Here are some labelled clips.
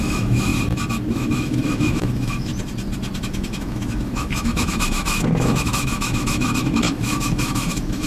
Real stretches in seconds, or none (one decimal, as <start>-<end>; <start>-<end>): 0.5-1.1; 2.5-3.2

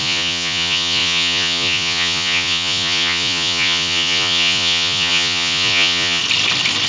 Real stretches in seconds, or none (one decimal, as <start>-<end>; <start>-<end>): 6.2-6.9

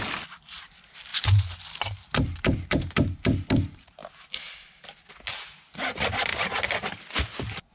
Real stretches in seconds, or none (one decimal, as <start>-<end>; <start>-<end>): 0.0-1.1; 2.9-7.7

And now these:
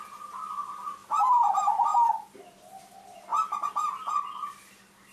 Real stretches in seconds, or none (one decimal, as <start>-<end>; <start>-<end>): 0.0-3.3; 4.1-5.1

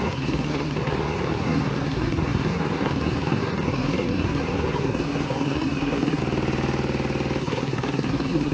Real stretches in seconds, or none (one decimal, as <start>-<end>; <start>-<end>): 6.2-7.4

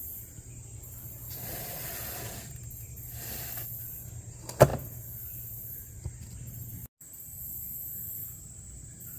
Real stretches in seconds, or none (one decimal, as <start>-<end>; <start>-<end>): 0.0-9.2